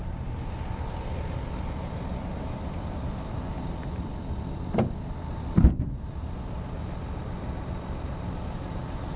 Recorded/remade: recorded